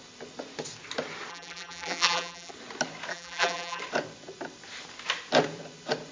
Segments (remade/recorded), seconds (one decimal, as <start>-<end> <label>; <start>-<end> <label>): 0.0-1.3 recorded; 1.3-2.5 remade; 2.5-3.1 recorded; 3.1-3.8 remade; 3.8-6.1 recorded